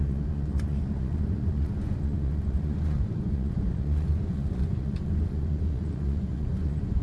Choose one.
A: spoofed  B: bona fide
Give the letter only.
A